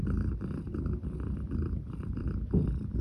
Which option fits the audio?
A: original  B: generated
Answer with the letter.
A